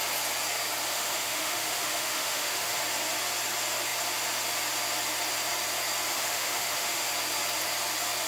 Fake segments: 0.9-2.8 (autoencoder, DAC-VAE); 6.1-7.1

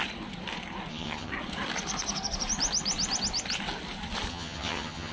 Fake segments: 0.9-1.3 (vocoder, HiFi-GAN); 4.3-5.1

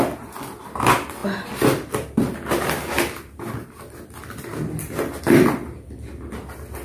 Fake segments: none

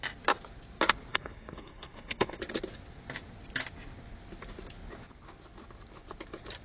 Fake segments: 1.1-2.4 (codec, SNAC)